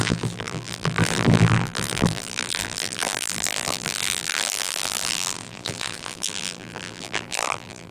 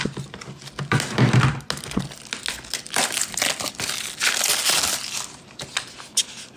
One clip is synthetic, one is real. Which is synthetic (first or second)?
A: first